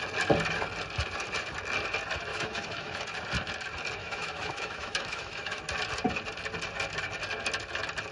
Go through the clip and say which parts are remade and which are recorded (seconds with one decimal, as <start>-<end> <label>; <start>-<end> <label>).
0.0-2.3 recorded; 2.3-3.0 remade; 3.0-4.0 recorded; 4.0-5.6 remade; 5.6-8.1 recorded